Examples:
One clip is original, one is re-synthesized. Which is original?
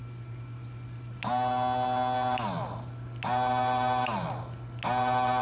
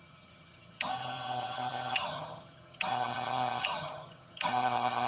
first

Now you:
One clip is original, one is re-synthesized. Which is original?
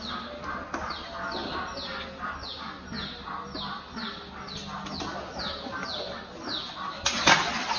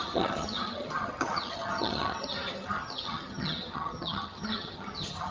first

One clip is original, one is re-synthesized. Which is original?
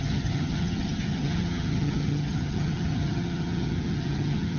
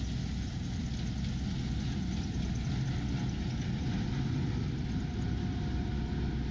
second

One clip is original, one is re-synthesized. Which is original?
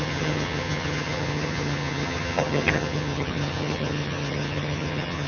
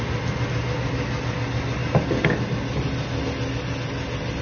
second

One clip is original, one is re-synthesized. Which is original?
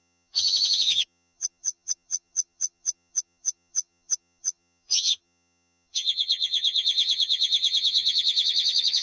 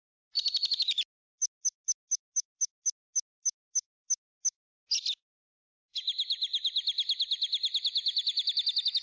second